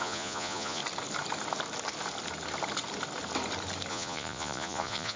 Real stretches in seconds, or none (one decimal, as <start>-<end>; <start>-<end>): 0.8-3.9